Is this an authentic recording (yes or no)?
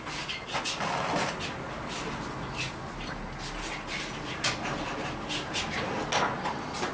yes